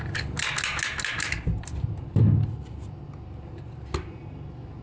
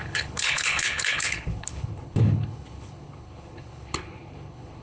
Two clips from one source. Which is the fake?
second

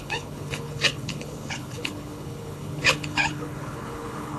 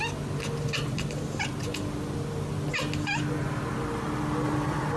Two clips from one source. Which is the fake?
first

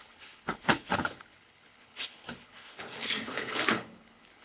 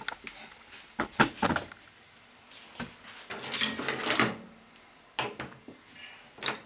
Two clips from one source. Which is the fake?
first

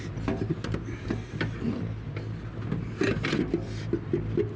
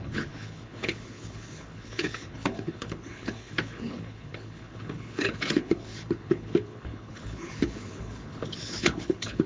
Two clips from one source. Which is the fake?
second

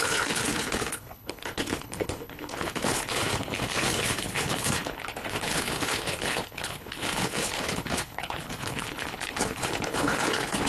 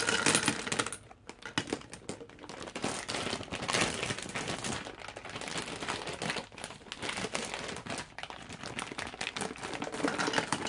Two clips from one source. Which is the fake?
first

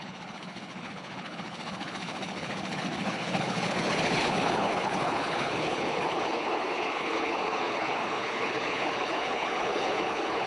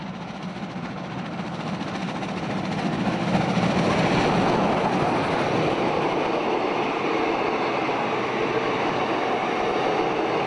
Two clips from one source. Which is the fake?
first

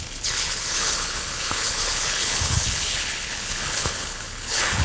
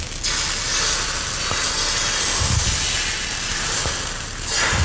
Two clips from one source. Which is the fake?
first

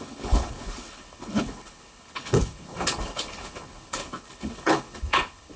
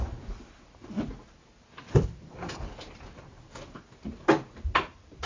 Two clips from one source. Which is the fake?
first